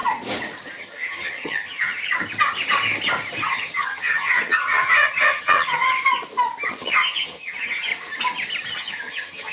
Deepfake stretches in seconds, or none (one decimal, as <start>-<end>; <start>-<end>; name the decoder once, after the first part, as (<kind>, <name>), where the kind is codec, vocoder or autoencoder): 0.8-2.0 (vocoder, HiFi-GAN); 3.5-6.0; 6.7-7.9; 8.8-9.5